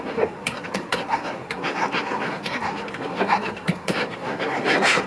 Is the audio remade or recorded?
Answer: remade